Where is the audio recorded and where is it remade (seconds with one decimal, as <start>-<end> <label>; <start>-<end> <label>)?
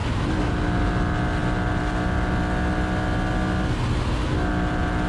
0.0-5.1 recorded